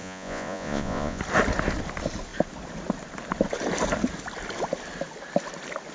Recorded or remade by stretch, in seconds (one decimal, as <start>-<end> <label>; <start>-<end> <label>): 0.0-1.2 remade; 1.2-5.9 recorded